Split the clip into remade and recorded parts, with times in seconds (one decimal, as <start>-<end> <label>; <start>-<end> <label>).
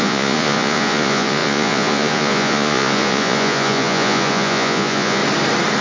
0.0-5.2 remade; 5.2-5.8 recorded